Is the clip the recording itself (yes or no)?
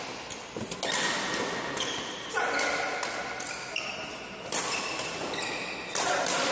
yes